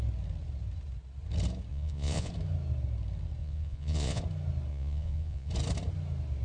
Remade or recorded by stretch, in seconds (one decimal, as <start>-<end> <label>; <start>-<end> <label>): 0.0-1.7 recorded; 1.7-2.3 remade; 2.3-3.4 recorded; 3.4-4.2 remade; 4.2-4.7 recorded; 4.7-5.5 remade; 5.5-6.4 recorded